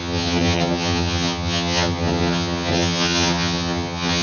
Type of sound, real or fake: fake